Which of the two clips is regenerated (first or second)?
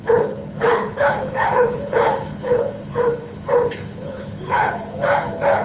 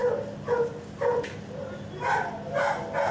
first